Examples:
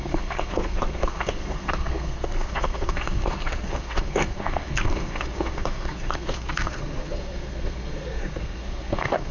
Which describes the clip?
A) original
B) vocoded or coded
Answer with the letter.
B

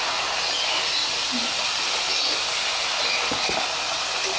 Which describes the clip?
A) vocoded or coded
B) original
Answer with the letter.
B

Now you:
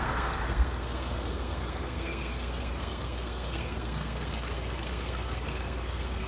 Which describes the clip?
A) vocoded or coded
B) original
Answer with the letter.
A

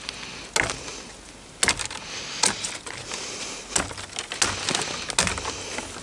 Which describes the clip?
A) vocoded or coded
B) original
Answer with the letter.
B